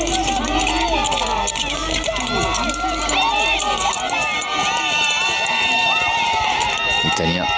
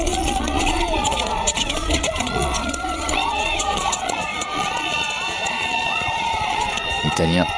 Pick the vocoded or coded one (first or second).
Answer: second